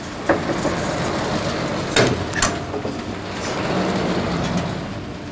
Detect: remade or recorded recorded